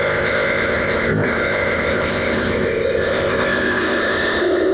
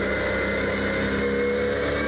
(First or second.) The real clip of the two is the second